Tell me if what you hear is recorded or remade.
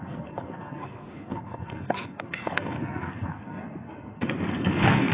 remade